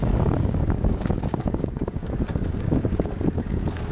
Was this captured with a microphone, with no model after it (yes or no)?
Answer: no